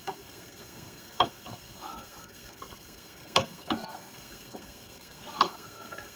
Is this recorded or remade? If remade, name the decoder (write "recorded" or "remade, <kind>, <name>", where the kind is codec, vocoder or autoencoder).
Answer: remade, codec, SNAC